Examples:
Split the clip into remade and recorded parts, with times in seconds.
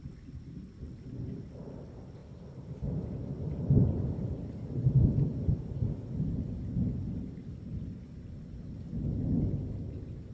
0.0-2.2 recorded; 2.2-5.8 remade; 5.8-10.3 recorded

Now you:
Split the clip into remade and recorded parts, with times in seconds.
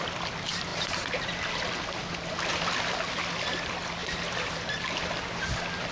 0.0-0.7 recorded; 0.7-1.4 remade; 1.4-4.0 recorded; 4.0-5.0 remade; 5.0-5.9 recorded